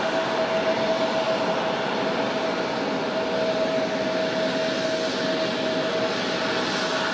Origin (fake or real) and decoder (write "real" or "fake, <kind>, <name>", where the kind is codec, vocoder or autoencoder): real